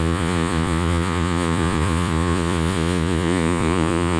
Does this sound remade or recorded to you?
remade